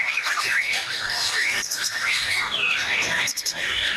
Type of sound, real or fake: fake